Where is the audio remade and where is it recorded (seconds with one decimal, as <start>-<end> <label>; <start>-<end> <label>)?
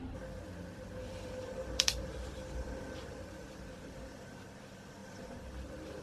0.0-1.0 recorded; 1.0-4.6 remade; 4.6-5.0 recorded; 5.0-6.0 remade